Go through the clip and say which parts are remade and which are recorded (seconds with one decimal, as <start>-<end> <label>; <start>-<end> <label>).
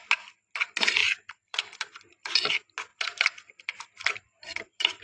0.0-1.0 recorded; 1.0-2.5 remade; 2.5-2.9 recorded; 2.9-5.0 remade